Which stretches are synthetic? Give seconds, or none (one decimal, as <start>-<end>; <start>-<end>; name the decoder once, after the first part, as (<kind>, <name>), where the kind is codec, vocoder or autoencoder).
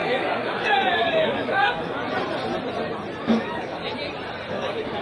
0.0-2.0 (codec, DAC); 3.2-3.8; 4.5-5.0